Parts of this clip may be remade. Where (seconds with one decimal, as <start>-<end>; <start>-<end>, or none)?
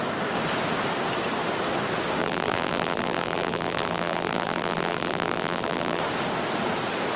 2.2-6.0